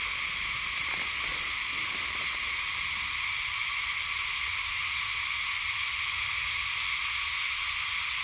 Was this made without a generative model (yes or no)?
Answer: yes